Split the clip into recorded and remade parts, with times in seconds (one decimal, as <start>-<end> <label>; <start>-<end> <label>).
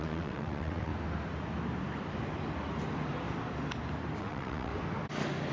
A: 0.0-0.9 remade; 0.9-4.2 recorded; 4.2-4.7 remade; 4.7-5.5 recorded